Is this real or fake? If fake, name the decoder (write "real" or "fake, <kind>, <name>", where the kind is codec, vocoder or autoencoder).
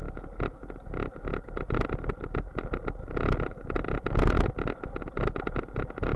real